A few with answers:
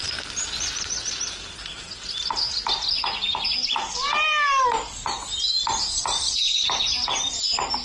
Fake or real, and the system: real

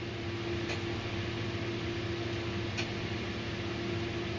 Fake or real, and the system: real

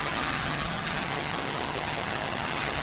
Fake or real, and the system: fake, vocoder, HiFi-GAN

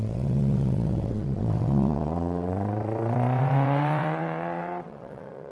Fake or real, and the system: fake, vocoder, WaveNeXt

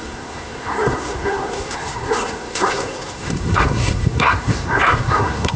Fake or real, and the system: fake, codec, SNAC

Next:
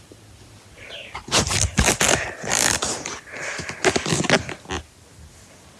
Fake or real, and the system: real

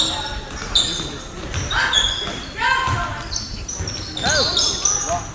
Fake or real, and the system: real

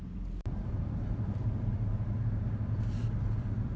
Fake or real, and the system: fake, vocoder, BigVGAN v2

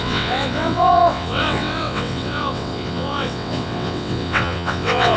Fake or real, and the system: fake, vocoder, WaveNeXt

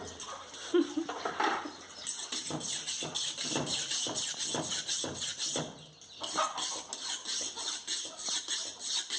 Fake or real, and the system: real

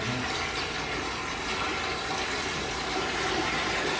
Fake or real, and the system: real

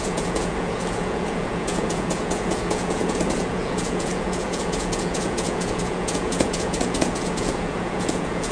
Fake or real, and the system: fake, vocoder, Vocos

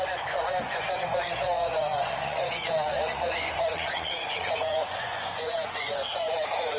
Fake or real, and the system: fake, vocoder, Vocos